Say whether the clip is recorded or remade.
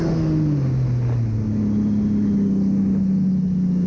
recorded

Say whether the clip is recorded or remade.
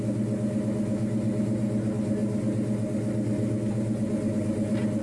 recorded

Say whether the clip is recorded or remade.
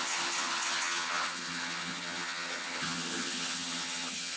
remade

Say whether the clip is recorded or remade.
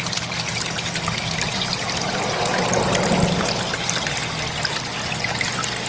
recorded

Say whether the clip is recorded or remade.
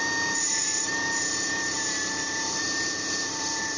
remade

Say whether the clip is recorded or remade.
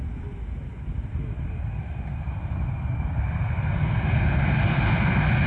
recorded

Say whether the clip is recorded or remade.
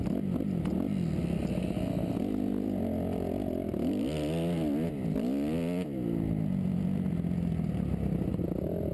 recorded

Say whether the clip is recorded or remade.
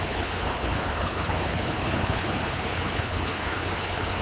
remade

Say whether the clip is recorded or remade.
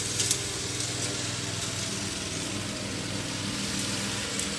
recorded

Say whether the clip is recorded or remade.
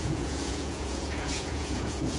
remade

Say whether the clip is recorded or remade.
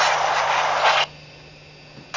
recorded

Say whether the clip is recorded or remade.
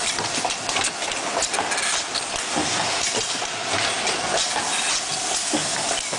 recorded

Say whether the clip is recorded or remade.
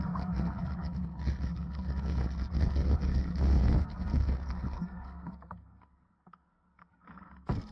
remade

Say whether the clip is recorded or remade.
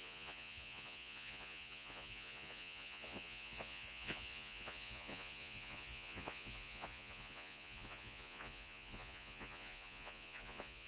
remade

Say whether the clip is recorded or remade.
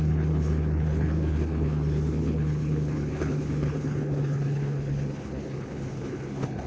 remade